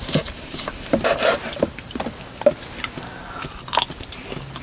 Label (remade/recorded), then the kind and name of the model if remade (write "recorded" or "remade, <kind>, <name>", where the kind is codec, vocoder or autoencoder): recorded